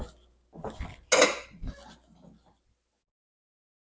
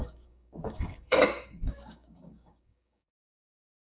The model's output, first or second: second